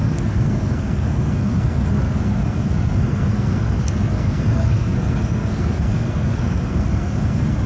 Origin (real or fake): fake